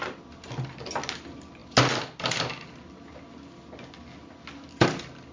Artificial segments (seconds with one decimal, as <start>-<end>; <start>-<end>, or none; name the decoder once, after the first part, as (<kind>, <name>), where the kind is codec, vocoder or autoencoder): none